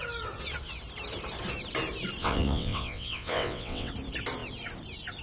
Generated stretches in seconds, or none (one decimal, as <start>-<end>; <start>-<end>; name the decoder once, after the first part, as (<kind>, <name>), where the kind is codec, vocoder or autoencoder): 2.2-3.9 (vocoder, WaveNeXt)